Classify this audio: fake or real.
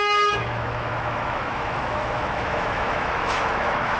fake